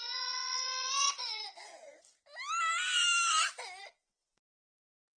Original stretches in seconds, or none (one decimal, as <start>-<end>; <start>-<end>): 1.7-3.8